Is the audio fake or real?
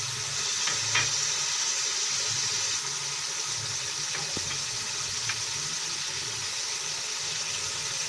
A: real